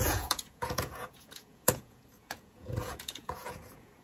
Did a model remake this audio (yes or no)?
yes